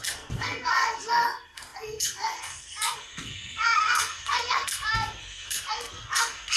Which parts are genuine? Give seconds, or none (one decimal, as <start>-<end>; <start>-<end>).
none